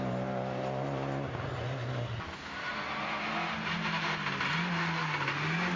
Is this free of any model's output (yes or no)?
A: yes